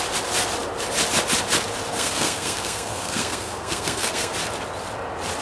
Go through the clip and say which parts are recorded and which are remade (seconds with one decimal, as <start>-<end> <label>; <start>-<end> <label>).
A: 0.0-1.9 recorded; 1.9-4.3 remade; 4.3-5.4 recorded